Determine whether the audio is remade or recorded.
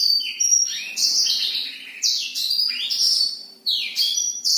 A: remade